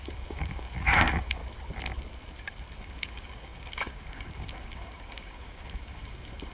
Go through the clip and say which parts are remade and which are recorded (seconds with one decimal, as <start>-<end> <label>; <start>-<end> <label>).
0.0-1.4 remade; 1.4-2.8 recorded; 2.8-6.5 remade